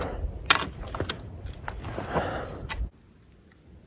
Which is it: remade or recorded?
recorded